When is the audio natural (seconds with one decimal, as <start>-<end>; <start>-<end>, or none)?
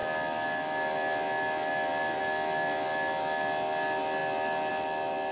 0.0-5.3